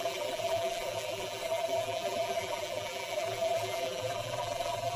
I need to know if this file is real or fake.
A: fake